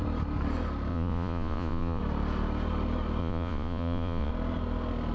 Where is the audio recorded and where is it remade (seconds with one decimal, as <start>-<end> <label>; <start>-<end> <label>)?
0.0-0.9 recorded; 0.9-2.0 remade; 2.0-3.2 recorded; 3.2-4.3 remade; 4.3-5.1 recorded